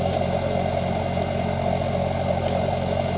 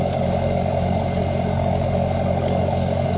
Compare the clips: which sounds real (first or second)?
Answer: first